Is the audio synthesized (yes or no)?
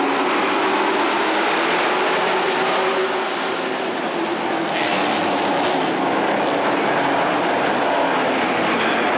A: no